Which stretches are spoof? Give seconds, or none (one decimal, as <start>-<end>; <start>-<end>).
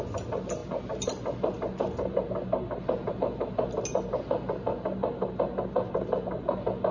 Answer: none